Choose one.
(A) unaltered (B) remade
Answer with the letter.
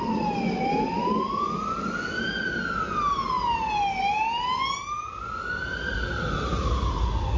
A